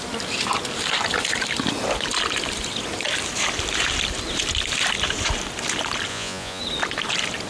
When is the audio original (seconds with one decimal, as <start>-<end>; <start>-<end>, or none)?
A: 0.0-6.1; 6.6-7.5